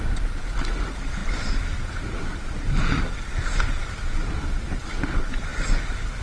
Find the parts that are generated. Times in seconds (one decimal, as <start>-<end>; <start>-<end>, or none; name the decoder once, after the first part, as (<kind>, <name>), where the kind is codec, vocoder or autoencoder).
none